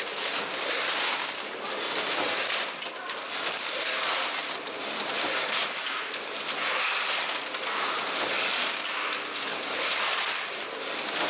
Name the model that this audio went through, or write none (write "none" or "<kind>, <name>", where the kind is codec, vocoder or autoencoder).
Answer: none